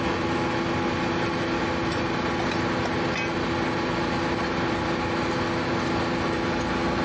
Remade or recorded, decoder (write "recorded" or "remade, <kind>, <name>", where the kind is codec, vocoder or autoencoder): recorded